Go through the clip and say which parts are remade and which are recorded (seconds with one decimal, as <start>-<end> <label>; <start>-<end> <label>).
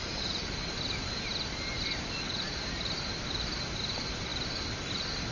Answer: 0.0-5.3 recorded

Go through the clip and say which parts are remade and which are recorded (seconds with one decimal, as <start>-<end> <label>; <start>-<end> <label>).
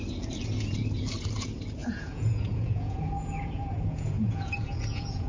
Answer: 0.0-1.8 recorded; 1.8-5.3 remade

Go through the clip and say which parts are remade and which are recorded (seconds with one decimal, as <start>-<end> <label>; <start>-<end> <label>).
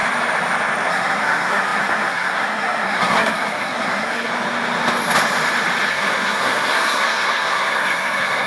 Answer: 0.0-0.9 recorded; 0.9-4.3 remade; 4.3-5.9 recorded; 5.9-8.5 remade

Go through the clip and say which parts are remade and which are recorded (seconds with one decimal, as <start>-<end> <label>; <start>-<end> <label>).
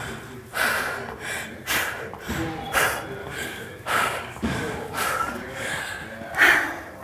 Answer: 0.0-3.2 recorded; 3.2-5.8 remade; 5.8-7.0 recorded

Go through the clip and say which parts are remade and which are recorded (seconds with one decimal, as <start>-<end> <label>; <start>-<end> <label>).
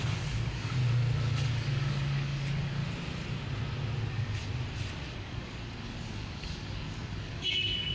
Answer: 0.0-0.8 remade; 0.8-1.3 recorded; 1.3-2.8 remade; 2.8-4.1 recorded; 4.1-4.5 remade; 4.5-5.1 recorded; 5.1-7.9 remade